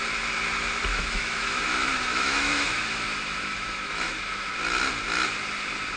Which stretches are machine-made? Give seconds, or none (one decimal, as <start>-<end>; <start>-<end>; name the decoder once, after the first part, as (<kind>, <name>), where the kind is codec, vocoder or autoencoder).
0.9-4.5 (autoencoder, DAC-VAE)